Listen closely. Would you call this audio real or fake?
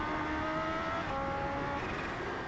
real